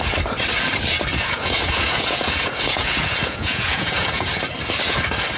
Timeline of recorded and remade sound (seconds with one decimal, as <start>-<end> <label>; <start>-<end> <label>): 0.0-1.1 recorded; 1.1-4.3 remade; 4.3-5.4 recorded